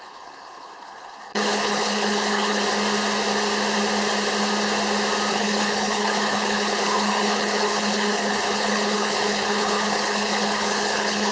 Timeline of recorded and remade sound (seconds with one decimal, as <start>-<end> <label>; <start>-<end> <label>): 0.0-2.6 remade; 2.6-5.3 recorded; 5.3-11.3 remade